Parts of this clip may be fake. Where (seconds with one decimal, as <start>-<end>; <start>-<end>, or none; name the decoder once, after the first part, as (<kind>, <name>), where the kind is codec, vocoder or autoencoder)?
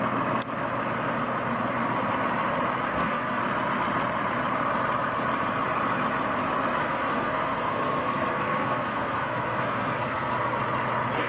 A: 2.9-3.4 (codec, SNAC); 6.8-10.6